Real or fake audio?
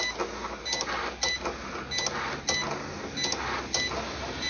real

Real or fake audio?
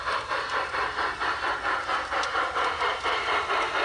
fake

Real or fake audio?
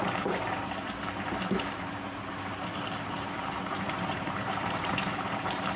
fake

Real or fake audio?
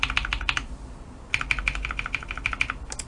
fake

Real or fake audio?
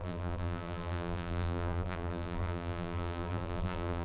fake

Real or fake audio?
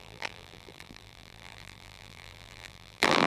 fake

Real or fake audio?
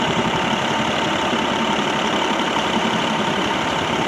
fake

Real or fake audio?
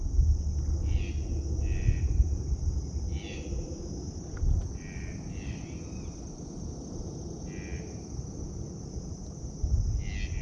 real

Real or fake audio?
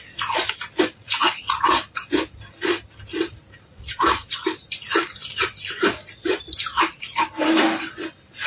fake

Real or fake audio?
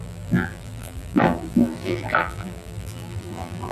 fake